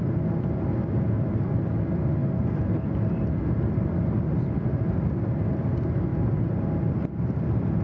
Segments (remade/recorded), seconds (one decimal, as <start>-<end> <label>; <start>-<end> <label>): 0.0-7.8 recorded